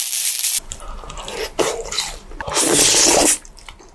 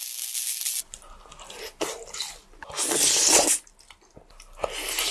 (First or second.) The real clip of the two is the second